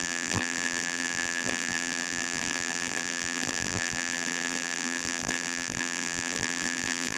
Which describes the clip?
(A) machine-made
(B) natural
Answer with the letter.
A